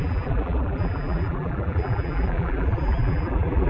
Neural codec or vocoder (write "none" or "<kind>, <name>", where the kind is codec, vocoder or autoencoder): vocoder, BigVGAN v2